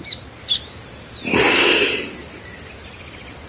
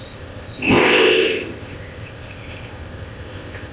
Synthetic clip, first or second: second